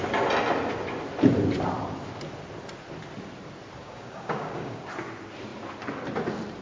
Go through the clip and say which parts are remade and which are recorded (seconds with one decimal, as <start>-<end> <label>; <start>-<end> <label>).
0.0-3.8 recorded; 3.8-4.8 remade; 4.8-6.6 recorded